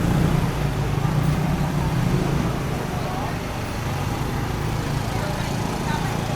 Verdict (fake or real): real